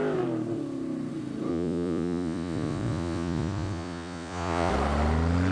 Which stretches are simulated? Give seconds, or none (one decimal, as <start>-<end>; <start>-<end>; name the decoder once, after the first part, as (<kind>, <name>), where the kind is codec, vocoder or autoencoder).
1.5-4.7 (vocoder, Vocos)